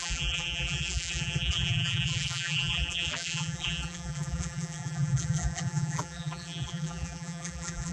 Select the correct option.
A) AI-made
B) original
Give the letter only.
A